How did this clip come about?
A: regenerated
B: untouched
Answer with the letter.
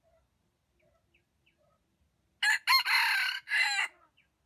B